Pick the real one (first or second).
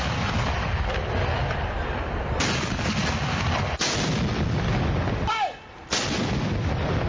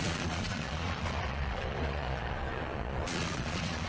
first